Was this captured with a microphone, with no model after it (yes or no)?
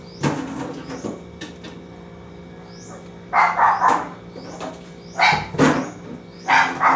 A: yes